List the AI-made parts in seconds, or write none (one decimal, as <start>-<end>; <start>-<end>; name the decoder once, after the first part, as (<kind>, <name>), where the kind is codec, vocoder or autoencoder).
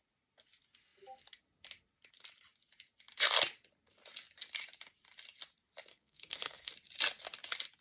5.9-6.7 (codec, SNAC)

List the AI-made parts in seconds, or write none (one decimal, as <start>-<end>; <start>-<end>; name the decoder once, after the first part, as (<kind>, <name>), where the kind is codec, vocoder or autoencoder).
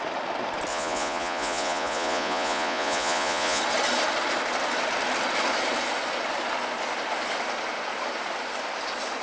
0.7-3.6 (vocoder, Vocos)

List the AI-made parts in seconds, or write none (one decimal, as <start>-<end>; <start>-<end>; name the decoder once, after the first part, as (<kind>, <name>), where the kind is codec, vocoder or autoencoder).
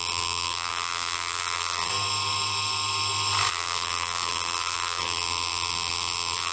0.0-1.9 (vocoder, BigVGAN v2); 3.5-6.5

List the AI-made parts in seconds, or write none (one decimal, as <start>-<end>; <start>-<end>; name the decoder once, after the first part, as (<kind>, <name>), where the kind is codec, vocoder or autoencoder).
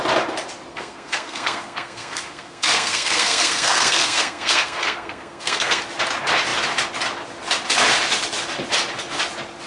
0.7-5.8 (codec, SNAC)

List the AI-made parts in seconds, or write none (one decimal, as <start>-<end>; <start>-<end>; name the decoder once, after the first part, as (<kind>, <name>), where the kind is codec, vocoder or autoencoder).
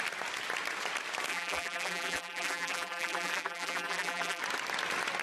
1.3-4.4 (vocoder, BigVGAN v2)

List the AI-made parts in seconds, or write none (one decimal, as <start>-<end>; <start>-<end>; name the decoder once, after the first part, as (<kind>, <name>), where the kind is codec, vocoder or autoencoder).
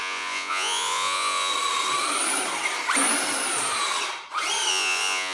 0.0-1.5 (vocoder, Vocos); 4.7-5.3